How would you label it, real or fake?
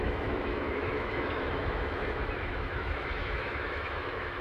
fake